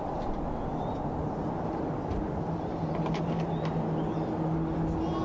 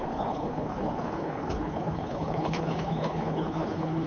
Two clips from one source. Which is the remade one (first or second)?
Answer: second